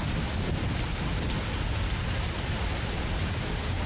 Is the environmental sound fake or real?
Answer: real